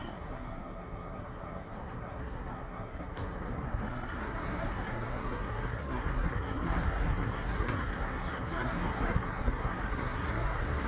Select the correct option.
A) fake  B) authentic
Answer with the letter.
A